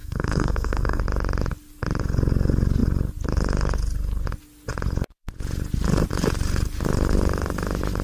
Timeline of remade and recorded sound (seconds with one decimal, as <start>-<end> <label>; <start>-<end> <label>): 0.0-1.0 remade; 1.0-8.0 recorded